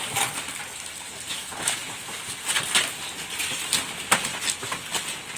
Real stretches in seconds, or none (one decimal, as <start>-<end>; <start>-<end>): 0.0-1.3; 2.2-5.4